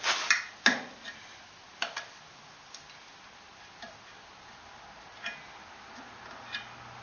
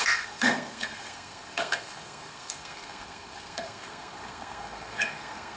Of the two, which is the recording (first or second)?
first